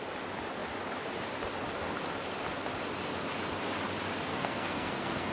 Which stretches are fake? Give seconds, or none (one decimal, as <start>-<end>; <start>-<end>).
4.3-5.3